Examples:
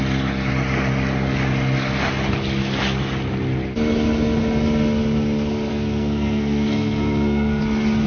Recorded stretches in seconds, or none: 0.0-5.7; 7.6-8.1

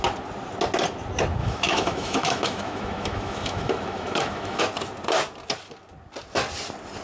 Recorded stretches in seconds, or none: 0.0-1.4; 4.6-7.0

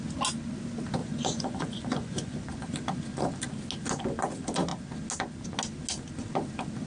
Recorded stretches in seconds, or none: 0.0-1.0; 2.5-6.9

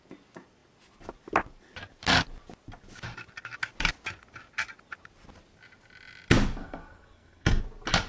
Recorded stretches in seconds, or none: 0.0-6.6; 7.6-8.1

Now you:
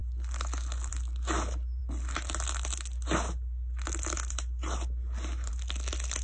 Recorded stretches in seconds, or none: 0.0-6.2

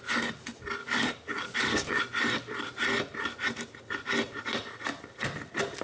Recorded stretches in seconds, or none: 0.0-0.8; 2.0-5.8

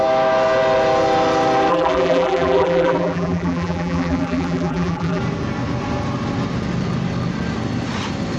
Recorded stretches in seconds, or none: 0.0-1.7; 5.2-8.4

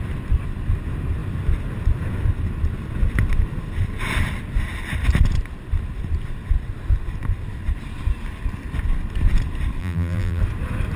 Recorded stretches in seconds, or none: 0.0-9.8; 10.4-11.0